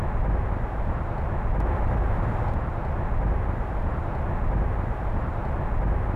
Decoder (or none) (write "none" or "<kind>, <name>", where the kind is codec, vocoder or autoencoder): none